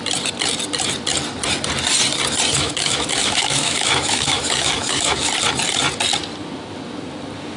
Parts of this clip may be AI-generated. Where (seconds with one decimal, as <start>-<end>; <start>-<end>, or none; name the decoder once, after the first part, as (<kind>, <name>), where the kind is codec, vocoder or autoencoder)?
2.5-5.3 (autoencoder, DAC-VAE)